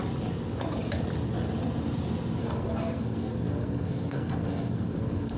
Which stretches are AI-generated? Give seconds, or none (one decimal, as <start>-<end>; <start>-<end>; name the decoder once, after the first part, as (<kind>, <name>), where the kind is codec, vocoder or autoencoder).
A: 2.4-5.4 (codec, SNAC)